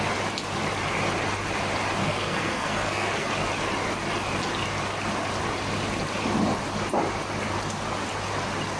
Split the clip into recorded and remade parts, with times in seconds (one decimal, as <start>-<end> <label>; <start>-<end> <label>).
0.0-2.0 recorded; 2.0-3.3 remade; 3.3-8.8 recorded